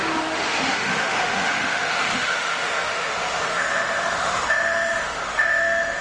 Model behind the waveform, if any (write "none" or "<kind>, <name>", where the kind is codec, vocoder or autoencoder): autoencoder, DAC-VAE